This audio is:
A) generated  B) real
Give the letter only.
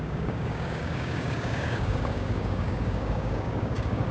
A